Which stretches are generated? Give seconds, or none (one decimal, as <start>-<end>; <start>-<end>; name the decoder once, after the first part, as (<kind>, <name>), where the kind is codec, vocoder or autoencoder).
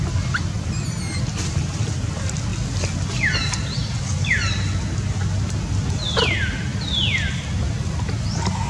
none